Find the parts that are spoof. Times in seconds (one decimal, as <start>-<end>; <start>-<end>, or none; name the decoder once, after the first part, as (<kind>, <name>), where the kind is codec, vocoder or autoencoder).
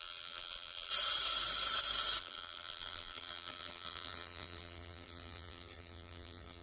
0.0-0.9 (vocoder, BigVGAN v2); 2.2-6.6